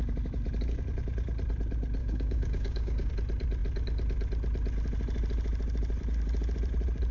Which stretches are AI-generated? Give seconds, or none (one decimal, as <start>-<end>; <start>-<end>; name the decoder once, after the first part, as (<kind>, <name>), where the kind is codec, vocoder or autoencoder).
2.0-3.1 (codec, DAC)

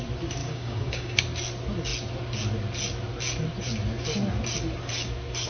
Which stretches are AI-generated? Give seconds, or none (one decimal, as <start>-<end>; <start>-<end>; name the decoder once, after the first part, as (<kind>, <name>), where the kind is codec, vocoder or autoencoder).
0.4-1.2 (codec, DAC)

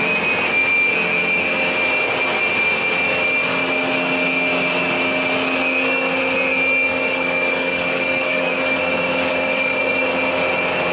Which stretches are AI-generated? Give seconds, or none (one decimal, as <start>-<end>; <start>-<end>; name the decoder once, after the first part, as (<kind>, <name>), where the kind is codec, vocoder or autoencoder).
6.9-8.8 (codec, DAC); 9.3-9.8

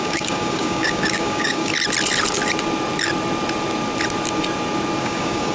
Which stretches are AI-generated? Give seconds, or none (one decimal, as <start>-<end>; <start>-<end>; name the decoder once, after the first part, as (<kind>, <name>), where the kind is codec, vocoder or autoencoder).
0.0-1.7 (codec, DAC); 5.0-5.5

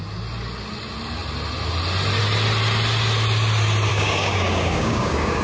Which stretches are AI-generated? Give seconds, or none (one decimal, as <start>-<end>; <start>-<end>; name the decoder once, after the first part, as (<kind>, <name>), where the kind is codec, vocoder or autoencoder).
3.9-5.4 (codec, DAC)

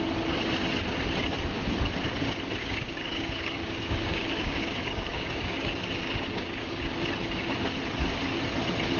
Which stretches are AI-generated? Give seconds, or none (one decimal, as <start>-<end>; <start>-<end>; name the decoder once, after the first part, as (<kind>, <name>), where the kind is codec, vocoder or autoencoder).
2.6-6.8 (codec, DAC)

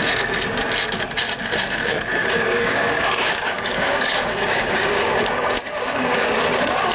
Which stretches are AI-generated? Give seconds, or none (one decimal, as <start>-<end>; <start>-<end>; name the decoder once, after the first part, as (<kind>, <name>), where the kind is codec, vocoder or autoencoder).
2.2-6.3 (codec, DAC)

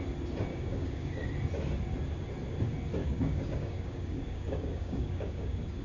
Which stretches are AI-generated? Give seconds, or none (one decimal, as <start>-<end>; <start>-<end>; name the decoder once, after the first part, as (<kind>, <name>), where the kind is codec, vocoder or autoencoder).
0.5-1.2 (codec, DAC); 3.0-5.8